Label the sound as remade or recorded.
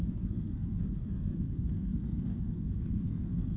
remade